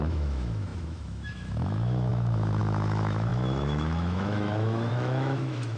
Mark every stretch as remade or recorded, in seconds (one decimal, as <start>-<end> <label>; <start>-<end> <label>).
0.0-5.8 remade